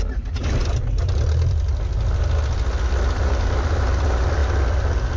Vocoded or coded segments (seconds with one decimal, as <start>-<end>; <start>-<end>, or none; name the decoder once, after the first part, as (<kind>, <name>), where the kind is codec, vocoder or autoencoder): none